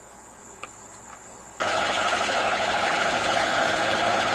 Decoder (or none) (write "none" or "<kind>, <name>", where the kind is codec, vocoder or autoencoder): codec, HILCodec